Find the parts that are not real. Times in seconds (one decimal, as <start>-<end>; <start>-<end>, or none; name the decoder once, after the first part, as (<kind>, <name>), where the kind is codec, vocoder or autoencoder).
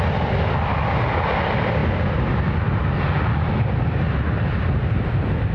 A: none